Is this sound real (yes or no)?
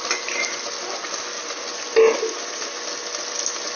yes